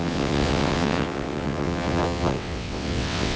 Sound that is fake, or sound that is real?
fake